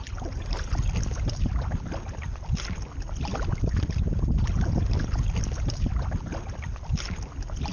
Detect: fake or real real